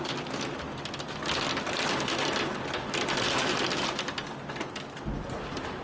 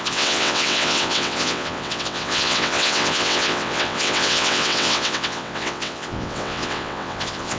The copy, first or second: second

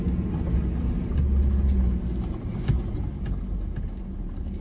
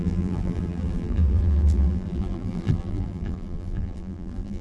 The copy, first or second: second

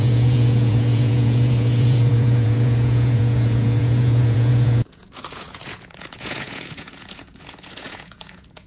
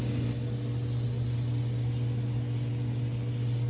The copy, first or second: first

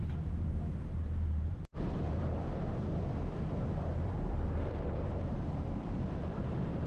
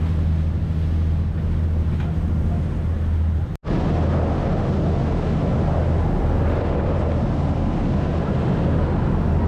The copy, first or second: first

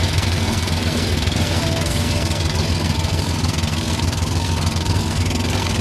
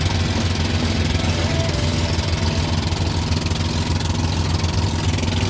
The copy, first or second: first